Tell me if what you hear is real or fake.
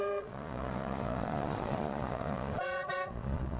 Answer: fake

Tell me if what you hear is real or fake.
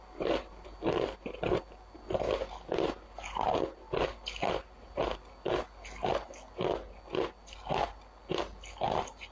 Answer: real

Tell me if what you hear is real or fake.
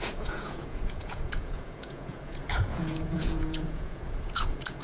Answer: fake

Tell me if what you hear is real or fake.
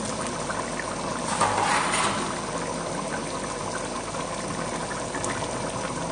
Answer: real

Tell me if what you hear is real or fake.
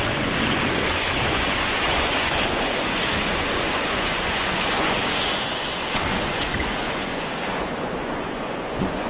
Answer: fake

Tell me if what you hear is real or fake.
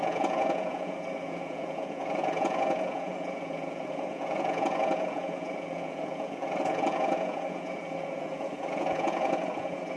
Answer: fake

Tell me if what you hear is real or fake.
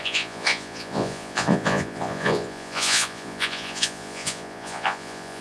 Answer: fake